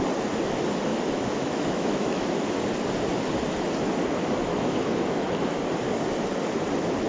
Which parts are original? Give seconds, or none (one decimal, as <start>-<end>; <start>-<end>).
0.0-0.9; 2.6-4.5; 5.6-7.1